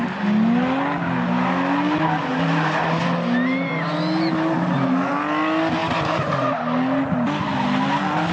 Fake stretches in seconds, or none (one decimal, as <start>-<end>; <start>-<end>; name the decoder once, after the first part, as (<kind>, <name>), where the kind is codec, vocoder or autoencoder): 2.3-3.0 (vocoder, BigVGAN v2); 5.8-6.5